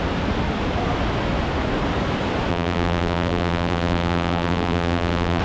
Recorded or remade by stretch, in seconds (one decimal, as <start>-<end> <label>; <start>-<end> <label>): 0.0-2.5 recorded; 2.5-5.4 remade